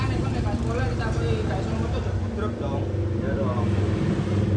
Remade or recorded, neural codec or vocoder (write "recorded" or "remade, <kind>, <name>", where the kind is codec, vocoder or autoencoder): recorded